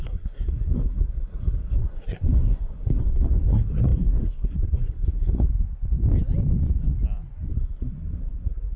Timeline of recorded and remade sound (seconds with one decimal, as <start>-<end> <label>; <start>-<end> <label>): 0.0-5.5 remade; 5.5-7.5 recorded; 7.5-8.8 remade